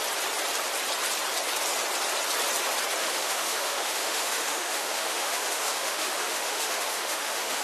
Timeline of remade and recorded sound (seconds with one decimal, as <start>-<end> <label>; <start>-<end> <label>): 0.0-3.0 recorded; 3.0-7.6 remade